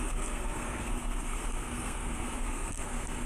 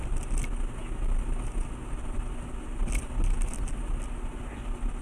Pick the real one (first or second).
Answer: second